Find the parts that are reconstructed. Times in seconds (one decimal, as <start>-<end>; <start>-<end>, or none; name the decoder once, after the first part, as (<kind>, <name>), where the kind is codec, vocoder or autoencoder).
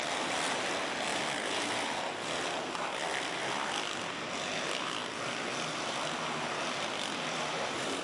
none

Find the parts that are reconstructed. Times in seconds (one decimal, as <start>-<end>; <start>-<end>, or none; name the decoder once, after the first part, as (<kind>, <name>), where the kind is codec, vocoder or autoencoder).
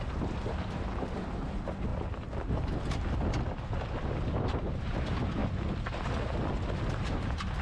0.0-1.9 (vocoder, BigVGAN v2); 4.3-5.4; 6.9-7.6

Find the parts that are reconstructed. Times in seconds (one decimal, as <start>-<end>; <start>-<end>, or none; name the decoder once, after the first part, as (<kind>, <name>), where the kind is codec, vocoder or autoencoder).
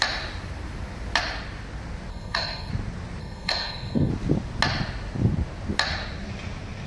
2.1-2.7 (codec, SNAC); 3.2-4.1